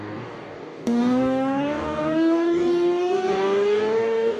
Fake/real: fake